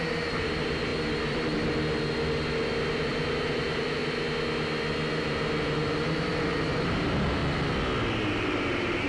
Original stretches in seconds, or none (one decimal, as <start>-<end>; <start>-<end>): 0.9-3.0; 4.0-5.1; 7.4-8.2